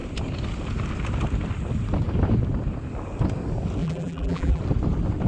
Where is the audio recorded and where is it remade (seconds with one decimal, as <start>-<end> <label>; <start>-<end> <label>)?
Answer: 0.0-3.8 recorded; 3.8-4.6 remade; 4.6-5.3 recorded